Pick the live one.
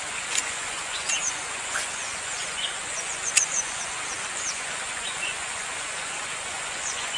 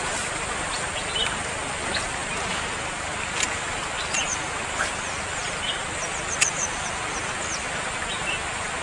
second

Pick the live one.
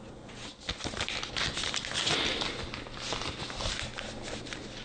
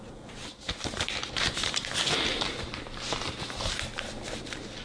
first